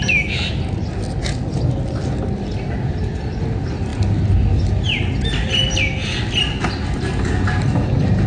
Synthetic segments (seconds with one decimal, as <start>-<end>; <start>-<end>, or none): none